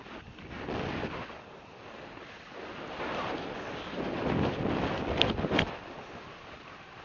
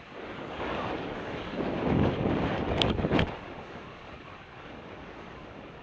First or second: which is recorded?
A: first